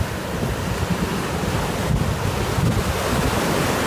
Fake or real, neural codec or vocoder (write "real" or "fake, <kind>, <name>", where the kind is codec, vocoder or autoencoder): real